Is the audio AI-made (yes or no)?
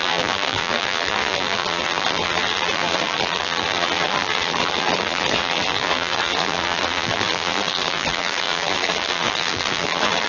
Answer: yes